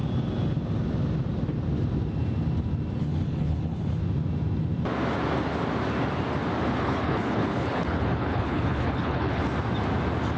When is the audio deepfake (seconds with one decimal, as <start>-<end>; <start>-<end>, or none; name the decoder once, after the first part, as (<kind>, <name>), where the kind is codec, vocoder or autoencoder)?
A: 3.0-4.0 (codec, HILCodec); 6.7-9.4